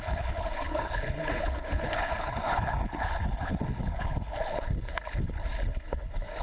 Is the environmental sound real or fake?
fake